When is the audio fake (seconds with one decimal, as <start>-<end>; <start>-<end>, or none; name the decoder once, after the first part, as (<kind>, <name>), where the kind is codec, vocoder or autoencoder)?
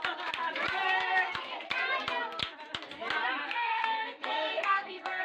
3.4-5.2 (codec, SNAC)